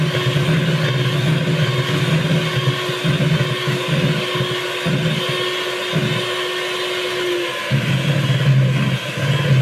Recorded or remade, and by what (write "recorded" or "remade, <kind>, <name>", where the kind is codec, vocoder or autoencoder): recorded